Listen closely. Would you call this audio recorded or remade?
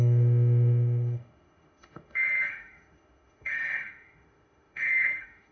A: remade